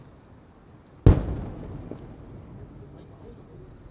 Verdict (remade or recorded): recorded